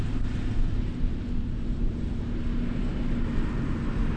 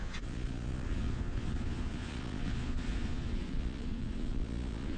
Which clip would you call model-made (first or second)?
second